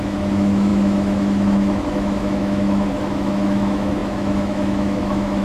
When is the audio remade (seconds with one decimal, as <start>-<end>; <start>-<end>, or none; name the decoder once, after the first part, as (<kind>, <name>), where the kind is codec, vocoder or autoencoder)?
0.0-5.4 (autoencoder, DAC-VAE)

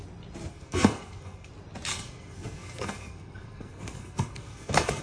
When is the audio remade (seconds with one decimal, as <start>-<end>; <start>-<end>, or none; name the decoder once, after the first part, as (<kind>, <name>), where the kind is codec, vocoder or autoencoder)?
0.5-1.5 (codec, SNAC); 1.9-5.0

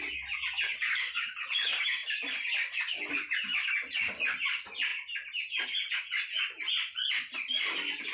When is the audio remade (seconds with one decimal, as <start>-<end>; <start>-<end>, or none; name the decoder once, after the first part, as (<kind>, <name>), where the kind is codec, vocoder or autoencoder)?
2.0-3.0 (vocoder, BigVGAN v2)

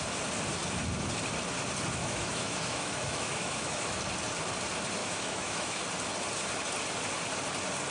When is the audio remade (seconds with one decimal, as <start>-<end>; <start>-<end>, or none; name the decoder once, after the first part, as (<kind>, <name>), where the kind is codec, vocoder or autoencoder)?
2.0-4.0 (autoencoder, DAC-VAE); 5.0-5.8

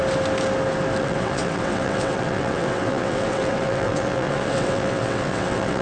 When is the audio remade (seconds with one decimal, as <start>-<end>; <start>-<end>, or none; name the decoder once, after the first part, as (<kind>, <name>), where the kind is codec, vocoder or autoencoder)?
1.0-5.8 (vocoder, WaveNeXt)